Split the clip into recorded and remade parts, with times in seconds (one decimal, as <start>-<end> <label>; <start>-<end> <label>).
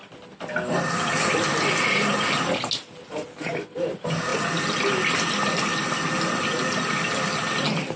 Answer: 0.0-8.0 recorded